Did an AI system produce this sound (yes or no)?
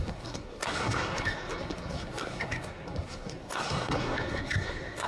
yes